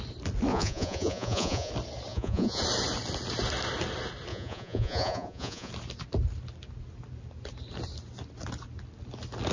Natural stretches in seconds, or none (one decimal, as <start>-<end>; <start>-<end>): 0.0-0.5; 1.7-2.1; 2.6-4.3; 5.7-9.5